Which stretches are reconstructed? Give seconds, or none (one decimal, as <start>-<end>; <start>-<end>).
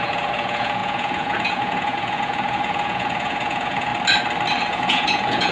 0.0-3.9; 4.7-5.5